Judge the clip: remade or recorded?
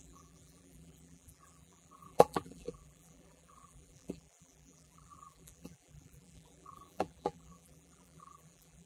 remade